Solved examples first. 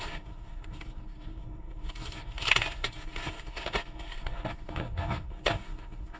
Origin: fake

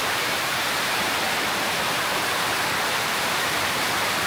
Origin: fake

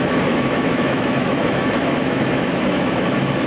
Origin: fake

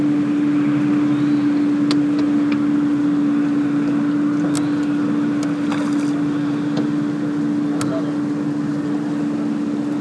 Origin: real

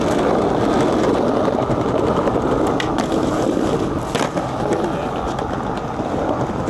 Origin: real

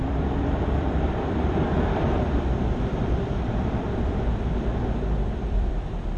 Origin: fake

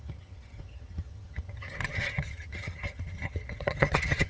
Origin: fake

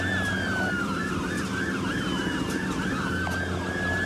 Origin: real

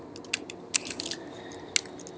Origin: real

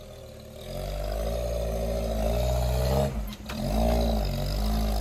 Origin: real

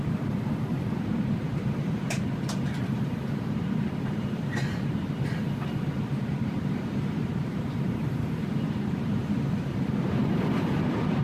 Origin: fake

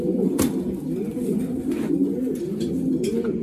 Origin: real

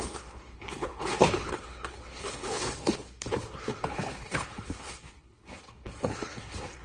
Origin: fake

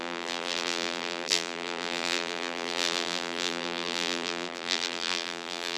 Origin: fake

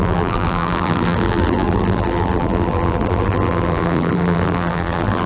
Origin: fake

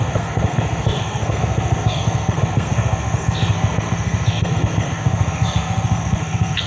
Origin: fake